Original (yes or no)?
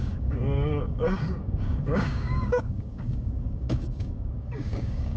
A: no